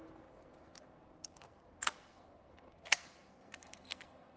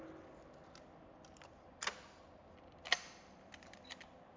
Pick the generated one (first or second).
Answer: first